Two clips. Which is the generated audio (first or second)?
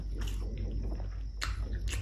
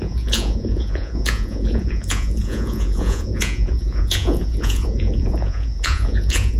second